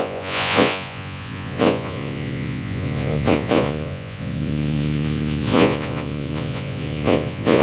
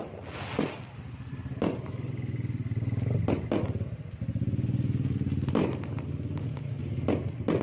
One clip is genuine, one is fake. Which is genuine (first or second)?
second